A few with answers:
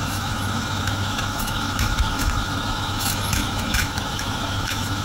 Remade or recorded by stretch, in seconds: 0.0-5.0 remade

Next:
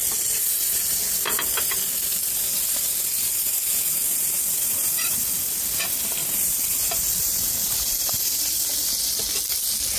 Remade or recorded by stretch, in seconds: 0.0-6.2 recorded; 6.2-6.9 remade; 6.9-10.0 recorded

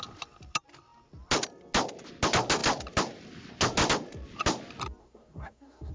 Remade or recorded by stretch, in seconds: 0.0-5.0 recorded; 5.0-5.9 remade